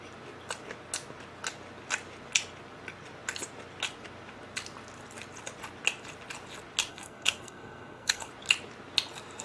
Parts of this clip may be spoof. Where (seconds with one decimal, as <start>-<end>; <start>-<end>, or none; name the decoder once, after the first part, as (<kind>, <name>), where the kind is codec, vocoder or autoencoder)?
6.9-8.3 (codec, SNAC)